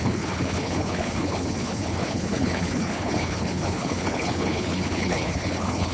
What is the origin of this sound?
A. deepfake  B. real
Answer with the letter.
A